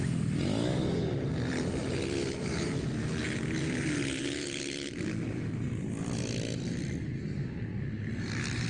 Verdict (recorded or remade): recorded